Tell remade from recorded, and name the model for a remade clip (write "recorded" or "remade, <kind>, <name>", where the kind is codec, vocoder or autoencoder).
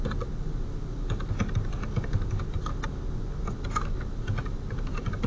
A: recorded